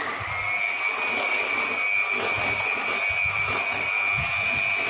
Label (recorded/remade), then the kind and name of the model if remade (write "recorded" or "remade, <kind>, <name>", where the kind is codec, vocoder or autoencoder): recorded